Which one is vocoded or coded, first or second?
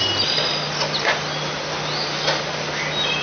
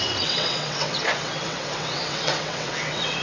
second